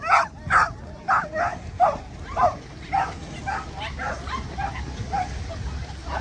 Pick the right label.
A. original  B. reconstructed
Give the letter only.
A